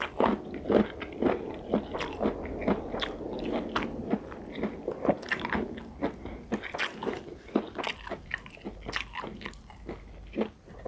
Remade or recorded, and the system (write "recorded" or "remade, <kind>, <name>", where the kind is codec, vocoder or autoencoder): recorded